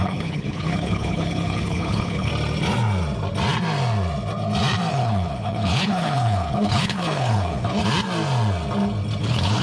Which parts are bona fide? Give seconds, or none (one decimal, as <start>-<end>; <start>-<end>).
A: 2.3-4.9; 7.8-9.2